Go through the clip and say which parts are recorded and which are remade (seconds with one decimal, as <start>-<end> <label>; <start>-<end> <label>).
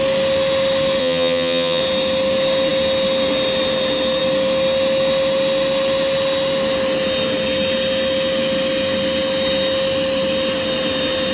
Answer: 0.0-1.0 recorded; 1.0-1.8 remade; 1.8-11.3 recorded